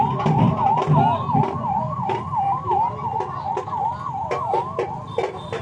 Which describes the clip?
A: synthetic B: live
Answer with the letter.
B